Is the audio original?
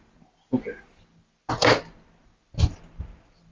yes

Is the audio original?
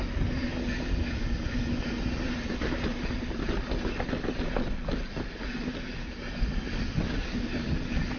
yes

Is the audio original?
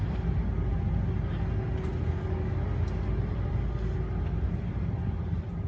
yes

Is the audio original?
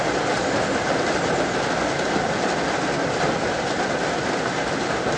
yes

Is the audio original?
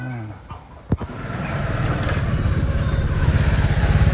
yes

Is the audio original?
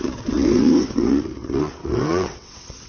no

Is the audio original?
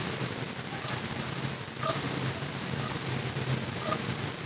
yes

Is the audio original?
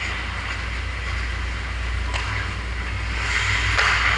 yes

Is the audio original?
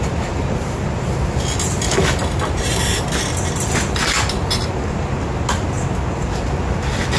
yes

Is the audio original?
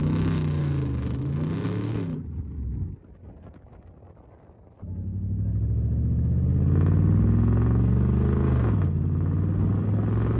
yes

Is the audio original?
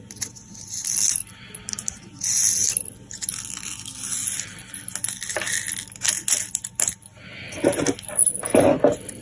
yes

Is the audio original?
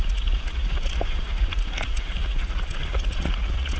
no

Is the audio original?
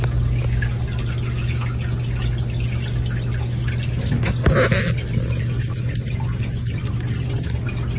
yes